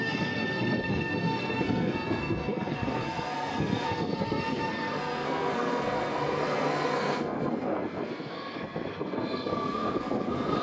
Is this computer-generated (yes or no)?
yes